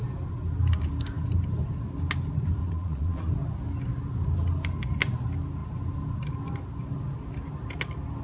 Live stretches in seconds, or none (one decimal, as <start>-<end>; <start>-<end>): 0.0-2.6; 3.3-8.2